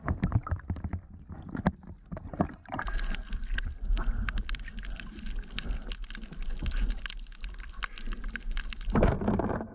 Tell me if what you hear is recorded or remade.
recorded